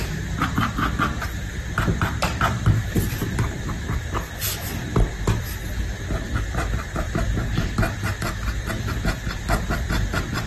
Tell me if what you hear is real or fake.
fake